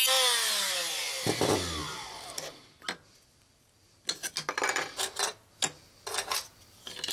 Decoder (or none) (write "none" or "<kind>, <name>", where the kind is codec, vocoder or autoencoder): none